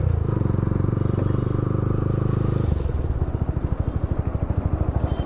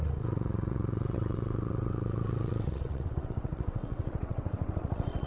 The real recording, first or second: first